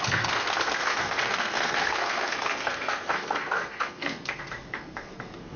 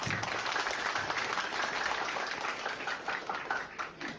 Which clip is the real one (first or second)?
second